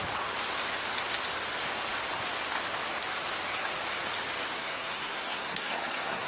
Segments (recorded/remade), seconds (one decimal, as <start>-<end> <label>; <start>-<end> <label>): 0.0-4.6 recorded; 4.6-6.3 remade